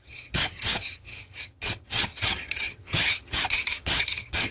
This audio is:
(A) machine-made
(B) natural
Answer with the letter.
A